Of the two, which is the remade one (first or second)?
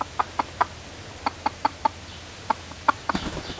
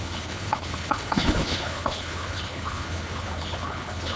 second